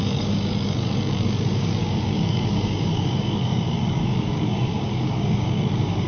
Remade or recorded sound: remade